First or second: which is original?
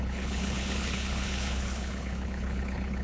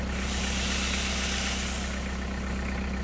second